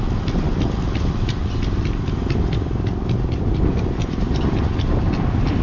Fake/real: real